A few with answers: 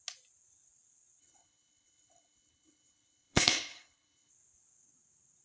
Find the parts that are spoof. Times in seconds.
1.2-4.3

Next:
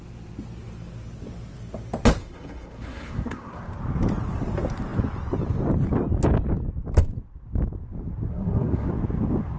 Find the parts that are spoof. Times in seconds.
2.2-3.6; 8.3-8.9